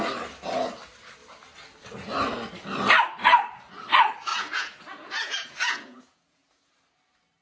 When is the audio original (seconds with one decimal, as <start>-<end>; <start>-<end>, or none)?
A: 0.0-4.3; 6.6-7.4

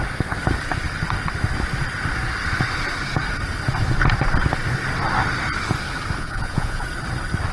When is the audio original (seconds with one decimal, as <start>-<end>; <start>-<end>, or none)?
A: 0.0-6.2; 6.8-7.5